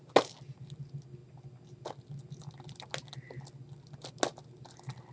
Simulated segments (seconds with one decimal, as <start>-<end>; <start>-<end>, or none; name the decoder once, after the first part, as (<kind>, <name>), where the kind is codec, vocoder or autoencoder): none